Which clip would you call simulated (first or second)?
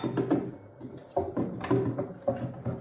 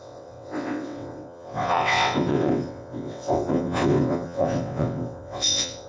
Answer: second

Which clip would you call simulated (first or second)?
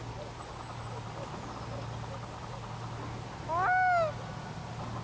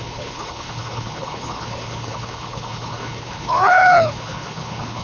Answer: second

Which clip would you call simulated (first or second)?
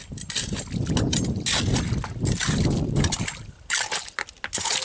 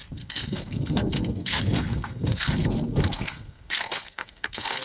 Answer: second